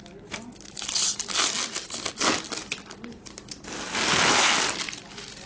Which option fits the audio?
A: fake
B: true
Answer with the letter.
B